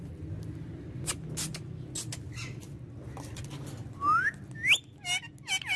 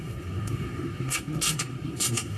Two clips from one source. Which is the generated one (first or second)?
second